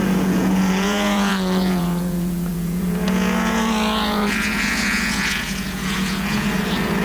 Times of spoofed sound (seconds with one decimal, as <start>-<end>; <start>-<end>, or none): 0.0-7.0